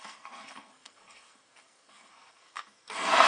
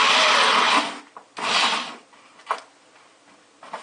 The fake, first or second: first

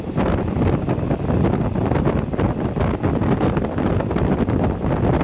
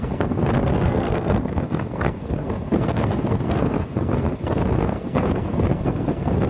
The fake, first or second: second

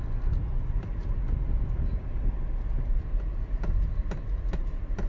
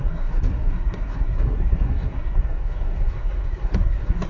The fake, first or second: second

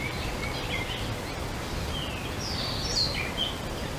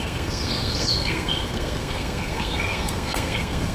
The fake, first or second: second